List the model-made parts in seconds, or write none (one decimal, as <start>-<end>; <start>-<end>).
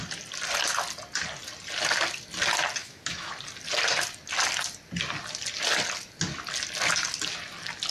2.8-3.3